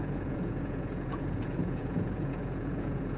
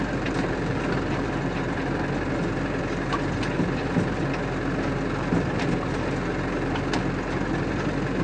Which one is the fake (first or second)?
first